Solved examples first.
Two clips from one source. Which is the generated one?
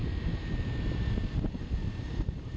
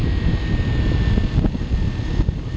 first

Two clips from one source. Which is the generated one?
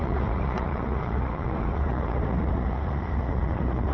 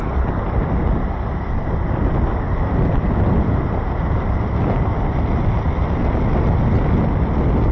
first